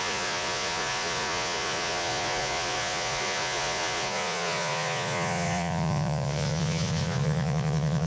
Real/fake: fake